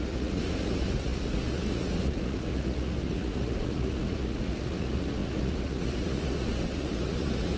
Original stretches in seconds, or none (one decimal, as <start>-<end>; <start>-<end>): none